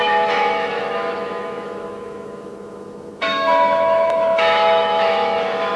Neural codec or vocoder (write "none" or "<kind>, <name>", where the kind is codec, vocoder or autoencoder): autoencoder, DAC-VAE